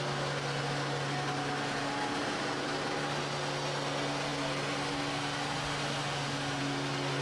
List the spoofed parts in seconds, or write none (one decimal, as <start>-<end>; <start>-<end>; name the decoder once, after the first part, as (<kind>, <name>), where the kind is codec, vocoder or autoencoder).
2.2-3.2 (vocoder, BigVGAN v2)